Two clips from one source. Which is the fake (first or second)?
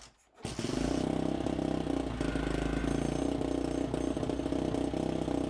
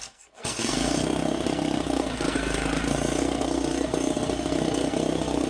second